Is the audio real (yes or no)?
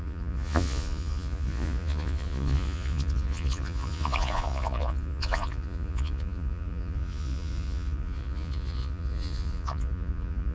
no